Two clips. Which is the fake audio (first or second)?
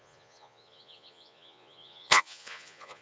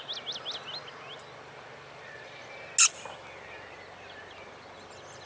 first